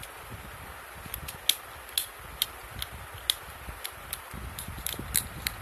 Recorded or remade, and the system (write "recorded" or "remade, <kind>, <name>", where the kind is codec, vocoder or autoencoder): recorded